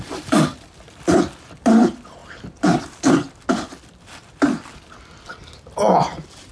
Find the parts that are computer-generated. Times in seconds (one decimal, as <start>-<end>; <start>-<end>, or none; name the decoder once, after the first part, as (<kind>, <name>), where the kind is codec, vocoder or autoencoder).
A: 0.0-5.3 (vocoder, BigVGAN v2)